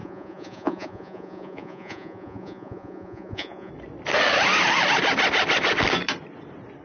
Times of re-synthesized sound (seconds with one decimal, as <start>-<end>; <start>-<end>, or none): 0.0-3.7